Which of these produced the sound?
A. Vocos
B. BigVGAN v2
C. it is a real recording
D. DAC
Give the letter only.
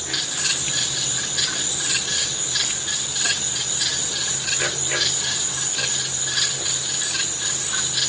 C